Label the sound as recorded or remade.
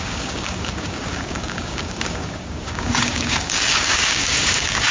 remade